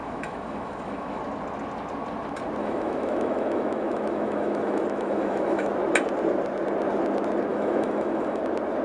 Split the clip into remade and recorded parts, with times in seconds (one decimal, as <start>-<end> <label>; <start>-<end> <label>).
0.0-1.2 remade; 1.2-2.6 recorded; 2.6-5.7 remade; 5.7-7.5 recorded; 7.5-8.4 remade; 8.4-8.8 recorded